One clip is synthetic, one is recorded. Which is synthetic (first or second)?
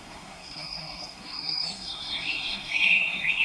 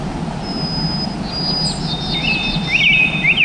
first